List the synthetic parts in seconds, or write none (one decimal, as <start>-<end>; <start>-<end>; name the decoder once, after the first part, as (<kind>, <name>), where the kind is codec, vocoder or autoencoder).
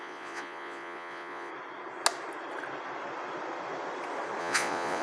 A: 0.0-1.5 (vocoder, Vocos); 4.4-5.0